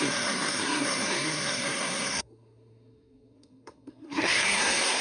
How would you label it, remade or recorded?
remade